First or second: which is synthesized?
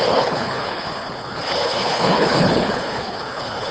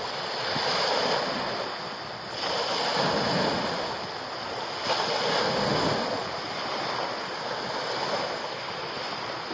first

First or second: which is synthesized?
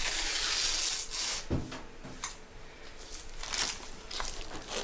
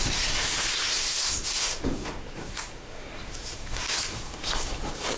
second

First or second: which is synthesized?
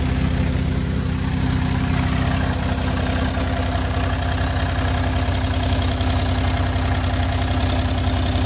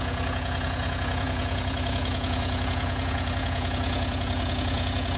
second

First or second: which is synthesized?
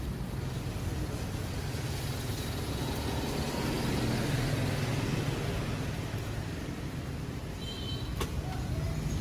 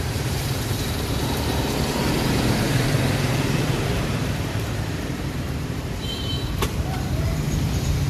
second